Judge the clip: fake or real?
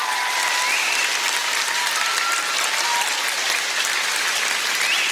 real